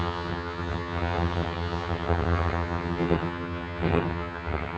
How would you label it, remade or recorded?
remade